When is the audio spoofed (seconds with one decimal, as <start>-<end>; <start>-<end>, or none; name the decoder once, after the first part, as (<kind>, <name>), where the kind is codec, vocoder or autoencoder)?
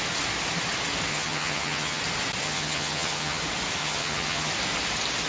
1.1-2.0 (vocoder, HiFi-GAN); 2.4-3.4; 3.8-4.5